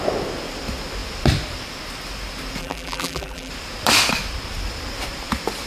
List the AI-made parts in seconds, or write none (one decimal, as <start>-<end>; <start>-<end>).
2.6-3.5